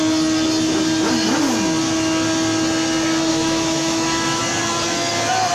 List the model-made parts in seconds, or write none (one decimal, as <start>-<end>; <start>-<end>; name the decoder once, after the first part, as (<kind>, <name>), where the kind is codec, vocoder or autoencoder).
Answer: 3.3-4.4 (autoencoder, DAC-VAE)